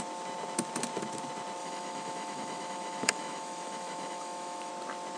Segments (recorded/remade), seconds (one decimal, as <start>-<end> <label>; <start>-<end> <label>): 0.0-1.6 recorded; 1.6-4.7 remade; 4.7-5.2 recorded